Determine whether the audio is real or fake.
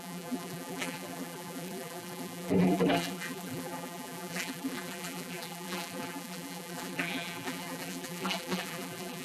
fake